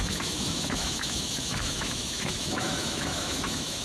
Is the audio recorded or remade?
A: remade